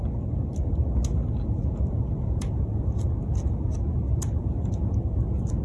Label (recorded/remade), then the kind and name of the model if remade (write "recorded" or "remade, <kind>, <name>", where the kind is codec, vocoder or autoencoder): recorded